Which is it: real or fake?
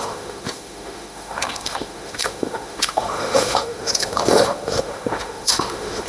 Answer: fake